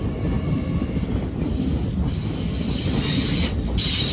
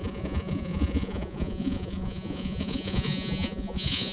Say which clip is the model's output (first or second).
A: second